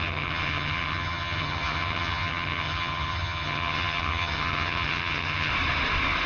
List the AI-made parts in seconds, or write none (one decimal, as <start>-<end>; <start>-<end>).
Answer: 0.0-5.5